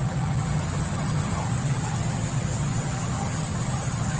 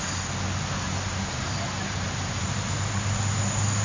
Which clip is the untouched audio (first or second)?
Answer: second